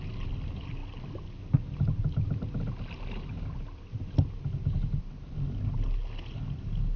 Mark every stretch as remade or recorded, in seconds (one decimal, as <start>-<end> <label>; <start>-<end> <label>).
0.0-7.0 recorded